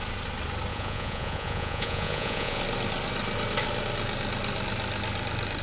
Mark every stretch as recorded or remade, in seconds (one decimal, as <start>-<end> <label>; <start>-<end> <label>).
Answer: 0.0-0.7 recorded; 0.7-2.6 remade; 2.6-5.6 recorded